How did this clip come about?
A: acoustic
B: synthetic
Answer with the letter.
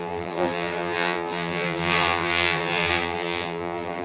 B